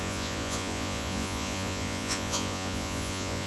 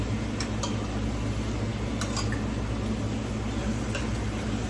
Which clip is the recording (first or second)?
second